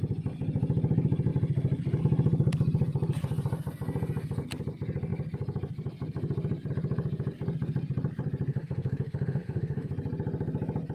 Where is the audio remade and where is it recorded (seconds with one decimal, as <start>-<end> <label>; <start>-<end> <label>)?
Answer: 0.0-8.5 recorded; 8.5-9.9 remade; 9.9-10.9 recorded